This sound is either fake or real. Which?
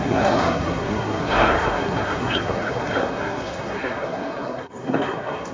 fake